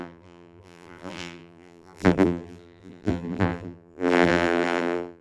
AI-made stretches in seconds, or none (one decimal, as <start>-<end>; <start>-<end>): 0.0-5.2